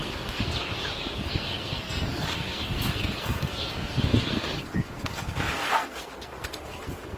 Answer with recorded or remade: remade